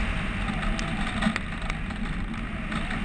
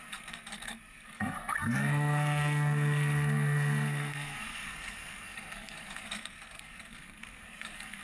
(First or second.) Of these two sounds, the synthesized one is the second